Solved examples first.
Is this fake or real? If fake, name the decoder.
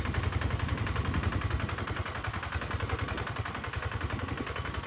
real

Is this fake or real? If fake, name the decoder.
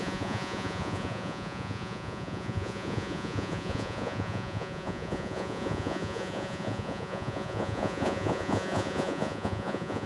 fake, vocoder, Vocos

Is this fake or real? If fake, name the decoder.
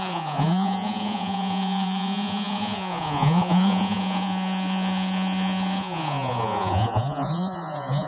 fake, vocoder, Vocos